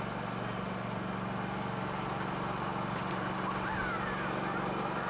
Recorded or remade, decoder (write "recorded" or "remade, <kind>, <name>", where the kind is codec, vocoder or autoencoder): recorded